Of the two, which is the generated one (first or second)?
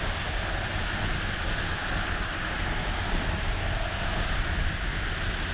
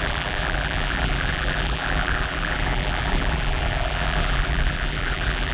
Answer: second